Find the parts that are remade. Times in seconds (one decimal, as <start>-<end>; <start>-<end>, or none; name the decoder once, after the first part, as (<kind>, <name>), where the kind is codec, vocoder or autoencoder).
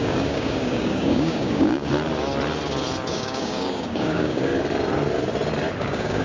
0.0-1.9 (codec, DAC); 3.1-4.5; 5.8-6.2